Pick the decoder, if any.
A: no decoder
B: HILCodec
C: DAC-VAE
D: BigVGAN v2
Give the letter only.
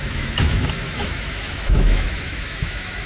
C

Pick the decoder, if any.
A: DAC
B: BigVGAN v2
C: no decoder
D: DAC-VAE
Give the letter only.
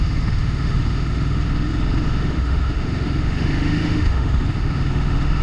D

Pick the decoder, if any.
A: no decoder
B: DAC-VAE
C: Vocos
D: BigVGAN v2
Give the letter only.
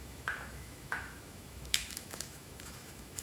B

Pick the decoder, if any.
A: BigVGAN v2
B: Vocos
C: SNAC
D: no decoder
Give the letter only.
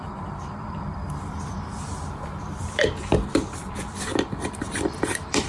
A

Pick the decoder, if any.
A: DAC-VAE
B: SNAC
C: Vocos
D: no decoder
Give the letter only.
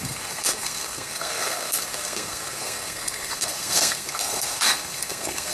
B